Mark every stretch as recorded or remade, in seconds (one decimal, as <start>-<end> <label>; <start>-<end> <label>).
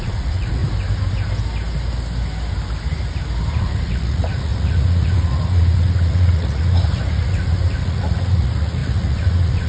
0.0-0.6 remade; 0.6-3.6 recorded; 3.6-9.7 remade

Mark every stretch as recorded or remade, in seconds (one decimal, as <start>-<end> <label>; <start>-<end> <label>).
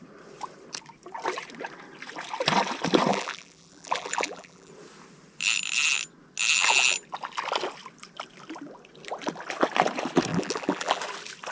0.0-3.1 recorded; 3.1-4.7 remade; 4.7-10.3 recorded; 10.3-11.0 remade; 11.0-11.5 recorded